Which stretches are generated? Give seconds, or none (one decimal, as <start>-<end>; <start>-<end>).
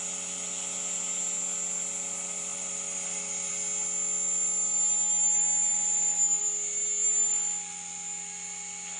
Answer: 2.5-3.5